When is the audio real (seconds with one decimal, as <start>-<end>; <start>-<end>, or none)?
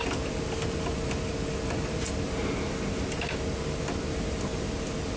0.0-5.2